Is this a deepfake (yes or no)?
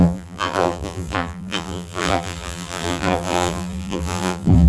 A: yes